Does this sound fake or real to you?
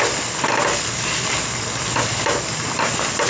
real